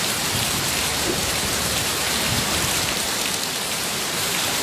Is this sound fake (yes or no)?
yes